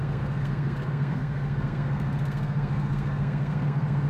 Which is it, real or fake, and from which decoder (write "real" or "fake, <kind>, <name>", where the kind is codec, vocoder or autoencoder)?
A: fake, codec, SNAC